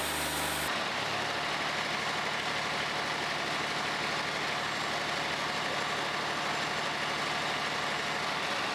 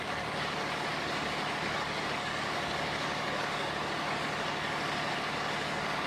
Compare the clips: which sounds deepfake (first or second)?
second